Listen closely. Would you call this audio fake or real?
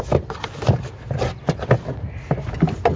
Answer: real